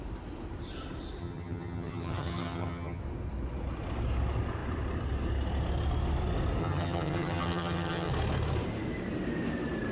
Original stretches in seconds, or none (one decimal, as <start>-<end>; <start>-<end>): 0.0-1.2; 3.0-6.6; 8.1-9.9

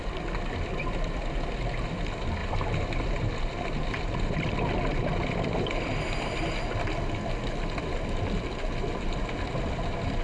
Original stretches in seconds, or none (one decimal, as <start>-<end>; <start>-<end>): 0.0-2.4; 3.1-10.2

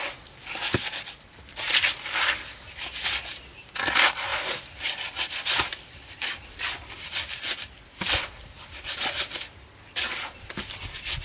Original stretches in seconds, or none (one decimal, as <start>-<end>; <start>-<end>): 0.0-4.3; 6.6-11.2

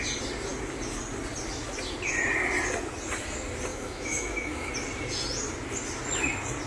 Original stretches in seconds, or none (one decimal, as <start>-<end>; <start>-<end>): 0.0-3.7; 4.7-6.7

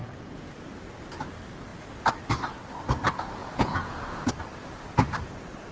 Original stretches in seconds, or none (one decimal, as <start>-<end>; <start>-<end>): 0.5-3.4; 4.3-5.7

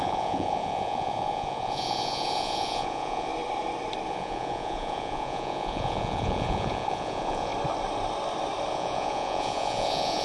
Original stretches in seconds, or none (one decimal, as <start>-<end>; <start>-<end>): 3.3-4.1; 7.5-8.7

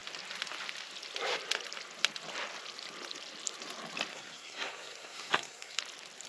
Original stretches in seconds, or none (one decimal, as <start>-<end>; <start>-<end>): 0.0-4.1; 5.8-6.3

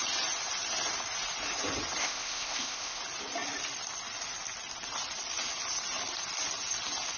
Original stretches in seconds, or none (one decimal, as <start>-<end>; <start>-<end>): 0.0-2.0; 3.0-7.2